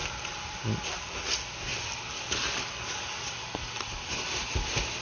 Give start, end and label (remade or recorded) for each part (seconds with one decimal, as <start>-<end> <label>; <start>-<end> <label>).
0.0-5.0 recorded

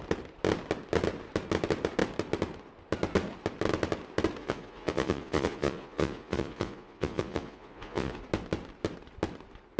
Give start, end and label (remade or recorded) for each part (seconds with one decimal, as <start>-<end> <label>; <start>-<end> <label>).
0.0-4.4 recorded; 4.4-8.2 remade; 8.2-9.8 recorded

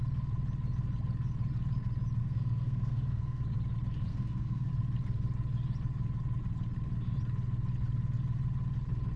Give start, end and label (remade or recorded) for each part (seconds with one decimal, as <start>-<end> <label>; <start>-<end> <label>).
0.0-2.2 recorded; 2.2-3.4 remade; 3.4-4.1 recorded; 4.1-4.7 remade; 4.7-9.2 recorded

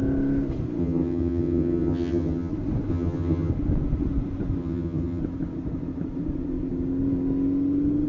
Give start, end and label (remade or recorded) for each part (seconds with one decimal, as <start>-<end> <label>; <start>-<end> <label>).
0.0-0.8 recorded; 0.8-2.5 remade; 2.5-2.9 recorded; 2.9-3.5 remade; 3.5-4.6 recorded; 4.6-5.2 remade; 5.2-8.1 recorded

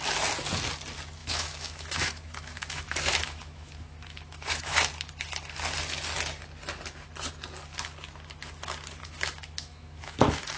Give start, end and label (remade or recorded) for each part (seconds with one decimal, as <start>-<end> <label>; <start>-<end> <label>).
0.0-1.2 recorded; 1.2-4.9 remade; 4.9-9.0 recorded; 9.0-10.6 remade